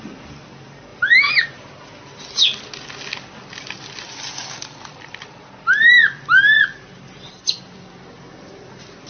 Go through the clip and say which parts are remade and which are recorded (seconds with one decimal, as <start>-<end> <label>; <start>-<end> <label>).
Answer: 0.0-0.9 recorded; 0.9-1.7 remade; 1.7-9.1 recorded